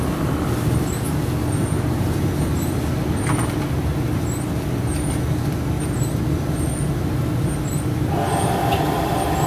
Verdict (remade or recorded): recorded